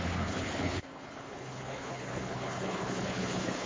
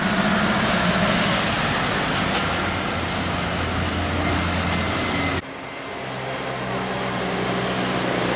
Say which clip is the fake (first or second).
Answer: first